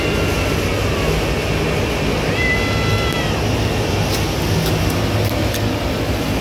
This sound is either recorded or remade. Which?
recorded